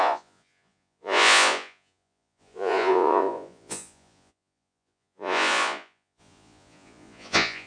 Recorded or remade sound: remade